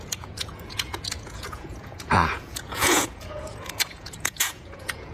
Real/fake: fake